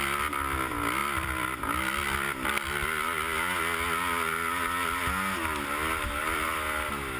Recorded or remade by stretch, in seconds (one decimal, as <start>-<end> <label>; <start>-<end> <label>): 0.0-1.0 recorded; 1.0-1.6 remade; 1.6-6.2 recorded; 6.2-7.2 remade